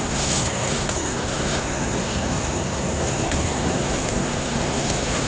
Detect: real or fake fake